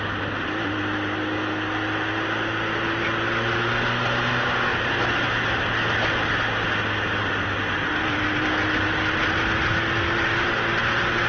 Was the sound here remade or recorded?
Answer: recorded